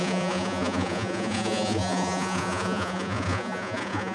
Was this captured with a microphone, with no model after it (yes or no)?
no